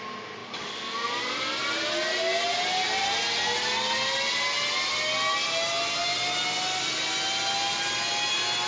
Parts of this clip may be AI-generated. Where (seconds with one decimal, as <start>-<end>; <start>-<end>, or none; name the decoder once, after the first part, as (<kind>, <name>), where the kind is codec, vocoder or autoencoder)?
none